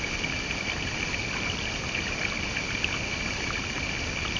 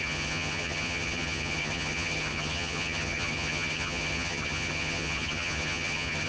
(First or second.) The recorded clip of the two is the first